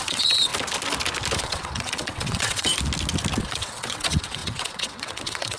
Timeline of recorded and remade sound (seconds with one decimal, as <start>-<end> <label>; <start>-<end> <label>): 0.0-0.5 remade; 0.5-1.4 recorded; 1.4-2.7 remade; 2.7-3.4 recorded; 3.4-5.6 remade